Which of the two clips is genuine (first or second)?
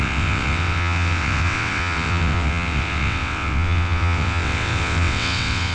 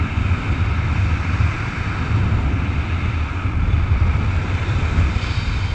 second